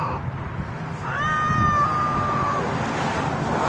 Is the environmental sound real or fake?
real